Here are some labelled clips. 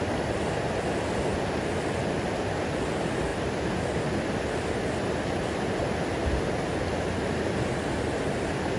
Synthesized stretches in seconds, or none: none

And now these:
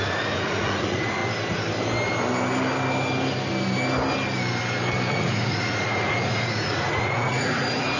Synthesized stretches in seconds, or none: 0.0-1.2; 5.1-8.0

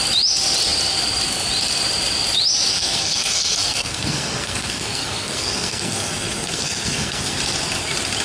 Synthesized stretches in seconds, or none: 2.7-7.4

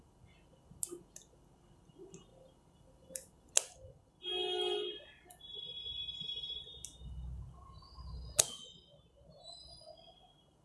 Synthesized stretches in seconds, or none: 2.3-3.5